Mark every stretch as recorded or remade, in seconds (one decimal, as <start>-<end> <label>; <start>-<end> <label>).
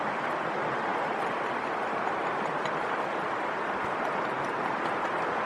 0.0-5.5 recorded